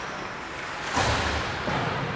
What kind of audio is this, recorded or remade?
recorded